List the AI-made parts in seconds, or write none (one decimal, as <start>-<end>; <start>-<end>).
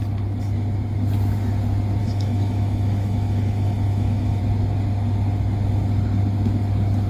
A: 2.0-4.4